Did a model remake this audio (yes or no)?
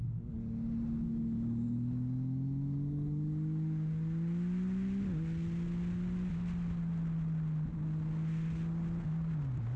no